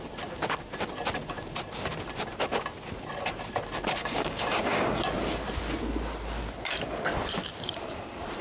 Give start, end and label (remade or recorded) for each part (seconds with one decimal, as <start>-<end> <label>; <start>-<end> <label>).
0.0-4.0 recorded; 4.0-4.9 remade; 4.9-8.4 recorded